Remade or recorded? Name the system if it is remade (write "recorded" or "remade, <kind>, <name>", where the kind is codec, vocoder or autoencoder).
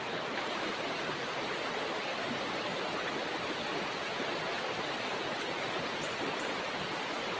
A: recorded